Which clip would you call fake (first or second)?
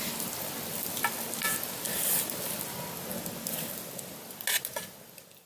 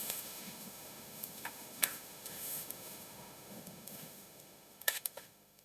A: second